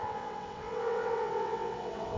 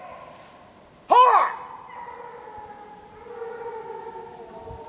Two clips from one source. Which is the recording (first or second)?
second